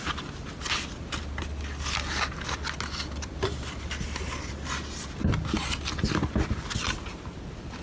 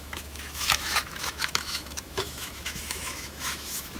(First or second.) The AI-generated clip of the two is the second